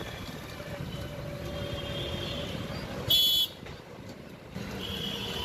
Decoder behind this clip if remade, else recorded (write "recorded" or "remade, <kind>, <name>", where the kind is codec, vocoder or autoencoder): recorded